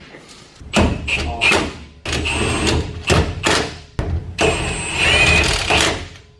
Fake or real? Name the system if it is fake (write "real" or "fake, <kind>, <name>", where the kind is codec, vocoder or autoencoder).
real